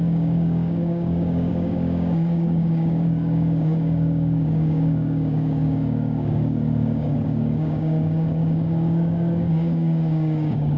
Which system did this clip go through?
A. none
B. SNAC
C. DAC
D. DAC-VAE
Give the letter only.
C